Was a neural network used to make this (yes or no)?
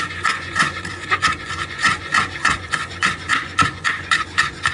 yes